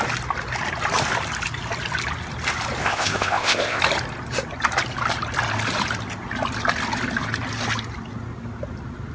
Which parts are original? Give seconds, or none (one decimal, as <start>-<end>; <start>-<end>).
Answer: 0.0-2.8; 3.8-9.1